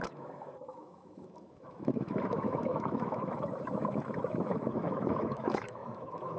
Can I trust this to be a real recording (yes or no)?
no